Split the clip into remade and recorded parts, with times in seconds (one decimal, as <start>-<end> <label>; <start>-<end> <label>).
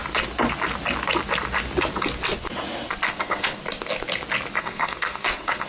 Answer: 0.0-3.1 recorded; 3.1-3.6 remade; 3.6-4.6 recorded; 4.6-5.7 remade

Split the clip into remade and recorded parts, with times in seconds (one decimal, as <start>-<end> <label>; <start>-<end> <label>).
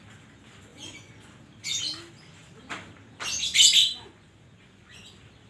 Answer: 0.0-0.7 recorded; 0.7-1.3 remade; 1.3-3.8 recorded; 3.8-5.1 remade; 5.1-5.5 recorded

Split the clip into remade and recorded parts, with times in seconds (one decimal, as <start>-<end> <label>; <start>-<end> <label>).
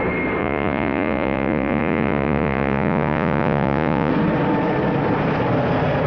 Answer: 0.0-0.4 recorded; 0.4-4.1 remade; 4.1-6.1 recorded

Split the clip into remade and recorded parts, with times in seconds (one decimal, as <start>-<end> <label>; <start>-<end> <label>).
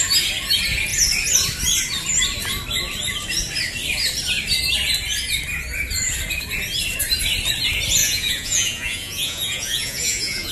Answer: 0.0-8.0 recorded; 8.0-10.5 remade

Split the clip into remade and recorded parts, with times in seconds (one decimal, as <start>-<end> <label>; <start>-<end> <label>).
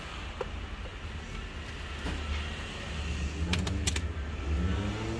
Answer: 0.0-5.2 recorded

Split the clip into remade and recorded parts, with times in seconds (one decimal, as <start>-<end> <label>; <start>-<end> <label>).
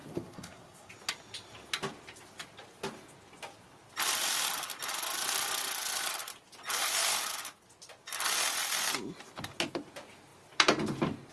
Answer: 0.0-0.9 remade; 0.9-11.3 recorded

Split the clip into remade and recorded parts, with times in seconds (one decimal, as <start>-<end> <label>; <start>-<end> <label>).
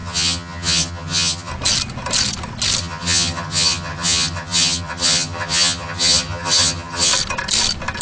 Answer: 0.0-1.5 remade; 1.5-2.8 recorded; 2.8-7.1 remade; 7.1-8.0 recorded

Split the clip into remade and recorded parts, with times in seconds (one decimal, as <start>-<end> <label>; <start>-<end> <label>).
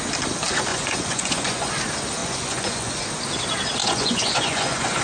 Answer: 0.0-0.7 recorded; 0.7-1.7 remade; 1.7-2.2 recorded; 2.2-3.0 remade; 3.0-3.8 recorded; 3.8-5.0 remade